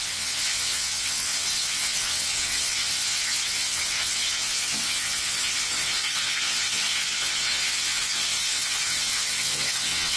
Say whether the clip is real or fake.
fake